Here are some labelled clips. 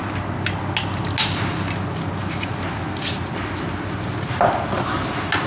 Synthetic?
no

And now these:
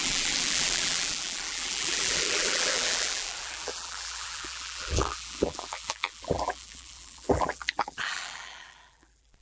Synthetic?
yes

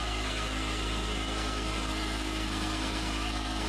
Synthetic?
yes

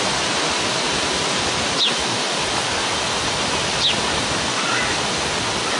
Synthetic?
no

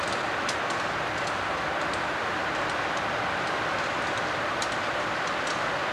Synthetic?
no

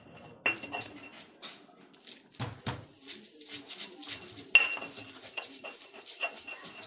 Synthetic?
no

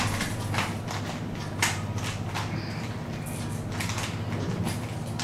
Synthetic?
no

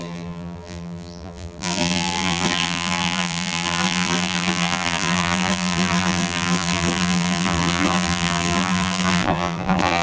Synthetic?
yes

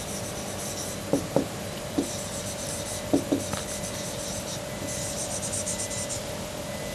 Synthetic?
no